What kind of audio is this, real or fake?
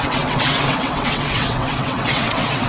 fake